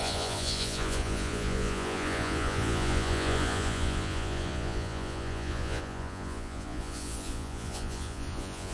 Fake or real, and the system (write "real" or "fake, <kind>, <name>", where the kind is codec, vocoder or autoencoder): fake, vocoder, Vocos